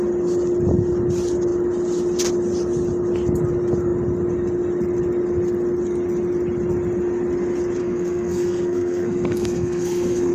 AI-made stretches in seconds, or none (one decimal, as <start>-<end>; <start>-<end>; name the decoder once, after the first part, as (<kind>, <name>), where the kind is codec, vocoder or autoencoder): 7.8-10.3 (codec, SNAC)